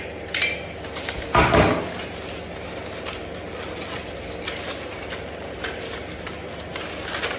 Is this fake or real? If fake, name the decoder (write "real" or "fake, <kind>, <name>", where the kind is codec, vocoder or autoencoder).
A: real